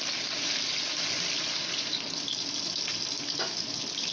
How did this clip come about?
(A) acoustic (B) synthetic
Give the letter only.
A